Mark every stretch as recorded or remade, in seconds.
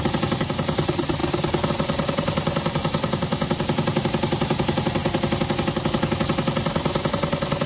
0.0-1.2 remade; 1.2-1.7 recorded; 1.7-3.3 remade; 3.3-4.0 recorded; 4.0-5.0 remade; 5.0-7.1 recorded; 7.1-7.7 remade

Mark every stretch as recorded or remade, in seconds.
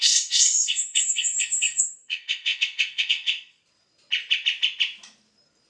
0.0-3.6 remade; 3.6-5.7 recorded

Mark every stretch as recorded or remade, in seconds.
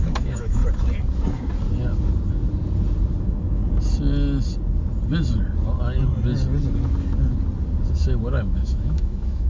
0.0-0.6 remade; 0.6-3.2 recorded; 3.2-3.6 remade; 3.6-7.9 recorded; 7.9-9.5 remade